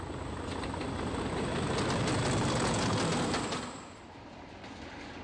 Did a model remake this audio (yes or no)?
no